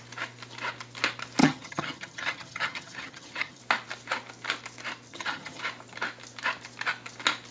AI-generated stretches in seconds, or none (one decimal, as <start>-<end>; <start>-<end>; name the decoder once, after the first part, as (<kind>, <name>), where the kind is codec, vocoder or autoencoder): 1.4-3.6 (vocoder, HiFi-GAN); 5.1-5.6